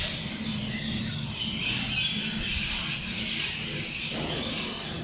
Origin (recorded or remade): recorded